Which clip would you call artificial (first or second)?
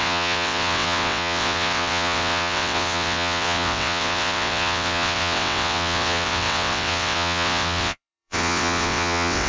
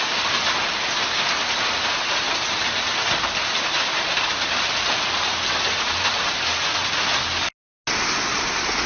first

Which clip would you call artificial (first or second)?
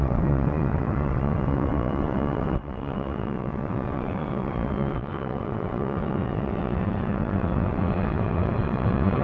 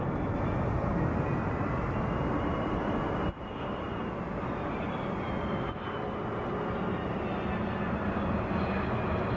first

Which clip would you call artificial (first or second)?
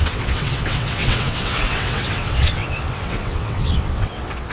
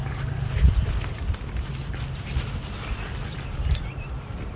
first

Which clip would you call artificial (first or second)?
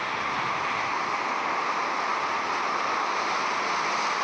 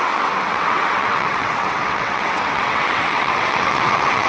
second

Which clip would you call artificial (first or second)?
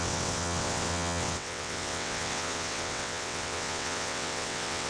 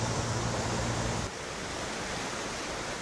first